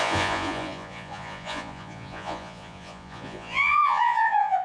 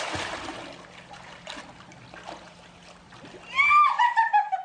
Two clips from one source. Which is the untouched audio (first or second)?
second